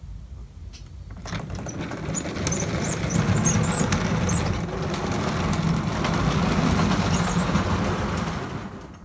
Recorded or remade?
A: recorded